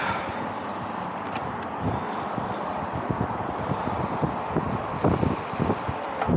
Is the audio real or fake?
real